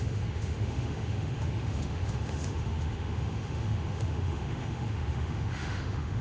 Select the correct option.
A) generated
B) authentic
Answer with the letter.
A